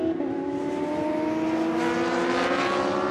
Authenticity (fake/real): real